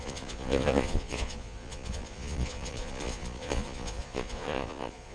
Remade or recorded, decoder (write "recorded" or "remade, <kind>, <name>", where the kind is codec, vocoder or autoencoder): remade, vocoder, Vocos